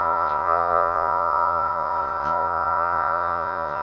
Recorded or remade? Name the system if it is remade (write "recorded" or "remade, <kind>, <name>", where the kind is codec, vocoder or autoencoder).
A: remade, vocoder, Vocos